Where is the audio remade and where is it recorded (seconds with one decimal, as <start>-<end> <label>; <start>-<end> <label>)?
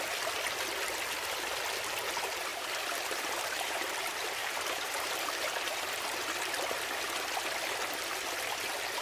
0.0-2.5 recorded; 2.5-4.0 remade; 4.0-4.4 recorded; 4.4-5.3 remade; 5.3-9.0 recorded